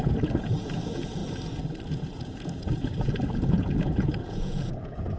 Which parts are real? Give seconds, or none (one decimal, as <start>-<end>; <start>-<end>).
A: 1.2-1.9